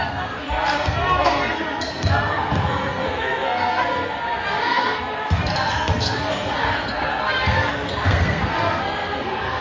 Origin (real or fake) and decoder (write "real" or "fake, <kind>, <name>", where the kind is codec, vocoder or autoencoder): fake, codec, SNAC